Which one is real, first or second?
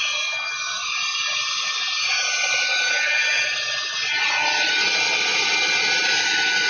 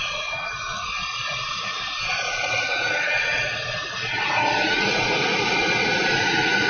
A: first